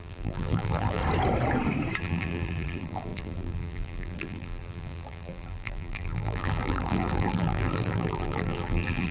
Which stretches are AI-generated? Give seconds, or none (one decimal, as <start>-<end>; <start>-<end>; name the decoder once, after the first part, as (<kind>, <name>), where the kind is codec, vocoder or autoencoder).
0.0-1.0 (vocoder, BigVGAN v2); 2.0-9.1